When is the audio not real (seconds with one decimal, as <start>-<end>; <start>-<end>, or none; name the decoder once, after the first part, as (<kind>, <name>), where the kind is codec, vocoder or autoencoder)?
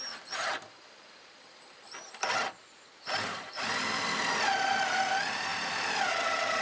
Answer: none